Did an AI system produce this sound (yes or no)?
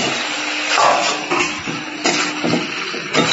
no